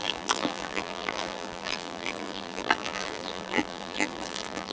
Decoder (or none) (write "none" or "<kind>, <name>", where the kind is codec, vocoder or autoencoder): vocoder, BigVGAN v2